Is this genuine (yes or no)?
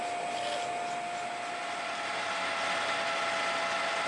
yes